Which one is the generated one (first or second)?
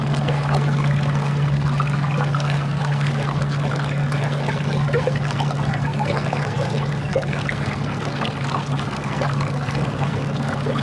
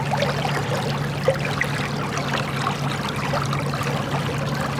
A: first